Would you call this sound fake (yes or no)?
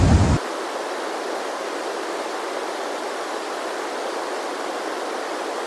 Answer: no